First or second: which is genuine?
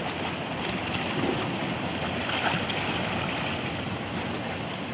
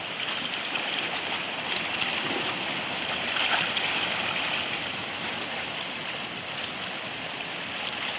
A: first